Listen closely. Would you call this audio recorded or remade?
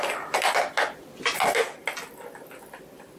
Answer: recorded